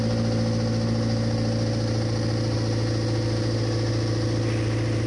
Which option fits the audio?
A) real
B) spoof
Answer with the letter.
A